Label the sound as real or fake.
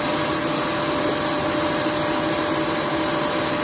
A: real